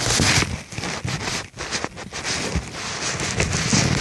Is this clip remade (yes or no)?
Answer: no